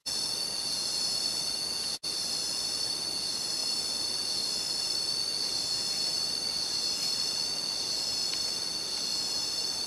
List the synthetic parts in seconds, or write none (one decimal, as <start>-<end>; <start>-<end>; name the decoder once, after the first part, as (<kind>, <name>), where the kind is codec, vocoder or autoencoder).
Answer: none